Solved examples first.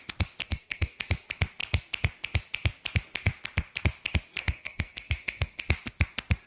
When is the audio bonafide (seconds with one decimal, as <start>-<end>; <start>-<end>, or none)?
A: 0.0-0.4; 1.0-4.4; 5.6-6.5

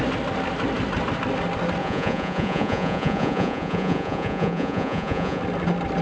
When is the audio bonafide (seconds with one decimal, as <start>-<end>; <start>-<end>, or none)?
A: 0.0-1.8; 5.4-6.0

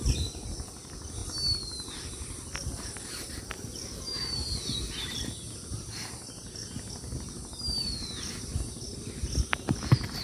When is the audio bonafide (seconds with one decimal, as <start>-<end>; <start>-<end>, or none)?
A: 0.0-1.2; 3.4-10.2

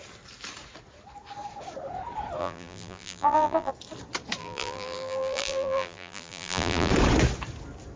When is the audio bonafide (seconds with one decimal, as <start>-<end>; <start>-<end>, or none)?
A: 0.0-2.4; 3.7-4.4; 6.9-8.0

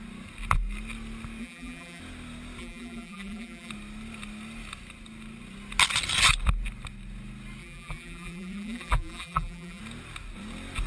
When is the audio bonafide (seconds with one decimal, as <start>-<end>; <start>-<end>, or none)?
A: 0.0-1.4; 2.0-2.6; 3.7-7.6; 9.8-10.9

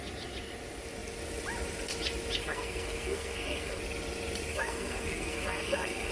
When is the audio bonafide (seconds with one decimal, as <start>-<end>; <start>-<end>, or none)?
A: 0.0-2.4; 3.8-4.5

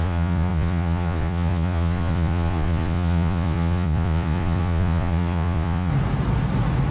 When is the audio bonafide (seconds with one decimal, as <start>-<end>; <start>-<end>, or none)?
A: 5.9-6.9